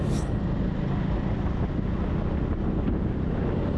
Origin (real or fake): real